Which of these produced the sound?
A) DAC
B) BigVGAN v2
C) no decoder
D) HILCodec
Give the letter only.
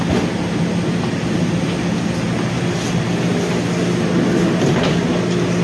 C